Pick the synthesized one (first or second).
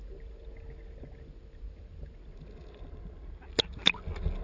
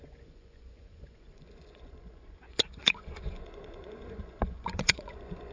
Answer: second